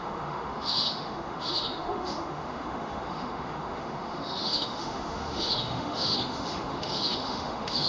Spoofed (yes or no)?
yes